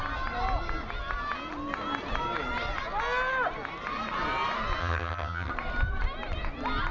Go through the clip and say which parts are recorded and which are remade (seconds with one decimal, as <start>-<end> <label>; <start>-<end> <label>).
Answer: 0.0-4.8 recorded; 4.8-5.5 remade; 5.5-6.9 recorded

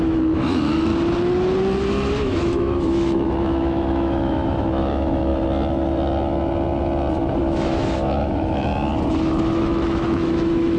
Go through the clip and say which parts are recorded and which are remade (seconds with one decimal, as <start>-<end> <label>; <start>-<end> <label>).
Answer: 0.0-0.9 remade; 0.9-2.2 recorded; 2.2-5.3 remade; 5.3-7.4 recorded; 7.4-8.7 remade; 8.7-9.4 recorded; 9.4-10.8 remade

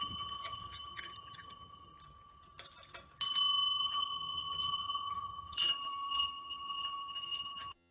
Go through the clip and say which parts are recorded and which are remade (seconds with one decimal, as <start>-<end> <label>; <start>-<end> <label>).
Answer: 0.0-1.9 remade; 1.9-3.8 recorded; 3.8-7.9 remade

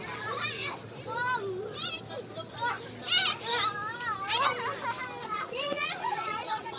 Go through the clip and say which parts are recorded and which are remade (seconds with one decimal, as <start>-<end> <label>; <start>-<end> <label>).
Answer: 0.0-5.2 recorded; 5.2-6.8 remade

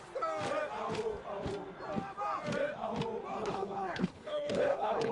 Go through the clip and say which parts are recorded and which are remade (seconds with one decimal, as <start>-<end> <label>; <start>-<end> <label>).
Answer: 0.0-3.4 recorded; 3.4-5.1 remade

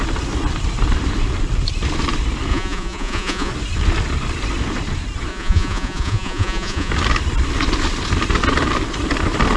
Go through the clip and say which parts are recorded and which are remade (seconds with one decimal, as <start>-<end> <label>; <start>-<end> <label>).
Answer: 0.0-2.5 recorded; 2.5-3.5 remade; 3.5-5.3 recorded; 5.3-6.9 remade; 6.9-9.6 recorded

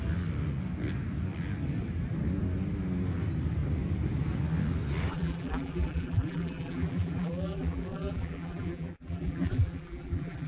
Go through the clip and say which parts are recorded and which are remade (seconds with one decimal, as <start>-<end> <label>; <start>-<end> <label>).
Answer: 0.0-5.1 recorded; 5.1-10.5 remade